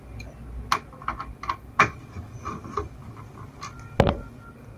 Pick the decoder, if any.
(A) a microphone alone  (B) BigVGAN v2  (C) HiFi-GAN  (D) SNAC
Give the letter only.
A